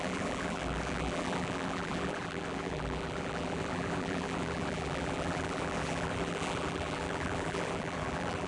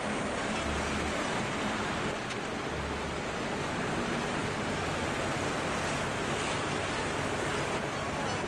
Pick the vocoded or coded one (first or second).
first